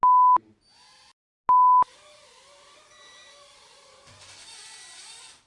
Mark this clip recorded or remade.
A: recorded